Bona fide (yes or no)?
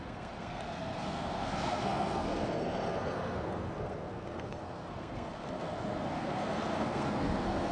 no